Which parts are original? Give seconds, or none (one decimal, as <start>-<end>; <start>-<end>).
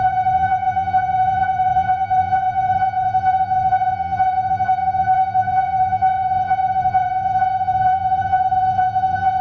none